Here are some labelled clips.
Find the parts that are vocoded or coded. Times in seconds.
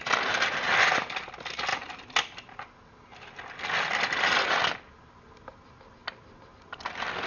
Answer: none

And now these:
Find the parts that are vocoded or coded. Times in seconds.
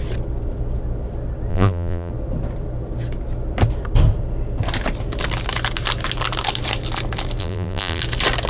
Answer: 1.5-2.1; 7.4-8.0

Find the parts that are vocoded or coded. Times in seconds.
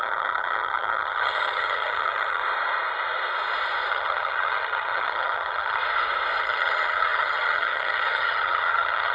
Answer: 0.0-2.4; 3.9-5.8; 6.4-9.1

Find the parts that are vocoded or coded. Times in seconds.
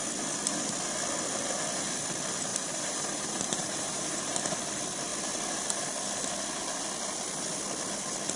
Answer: 2.5-4.4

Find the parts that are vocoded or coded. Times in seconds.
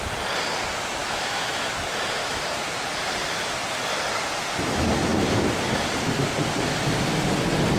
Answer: 1.0-1.5; 2.2-2.9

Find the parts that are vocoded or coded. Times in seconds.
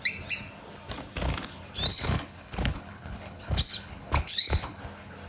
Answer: 1.9-4.8